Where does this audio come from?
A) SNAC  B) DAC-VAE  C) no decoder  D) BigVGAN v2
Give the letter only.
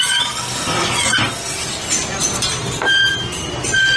C